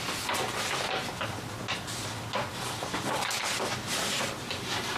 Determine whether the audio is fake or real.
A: real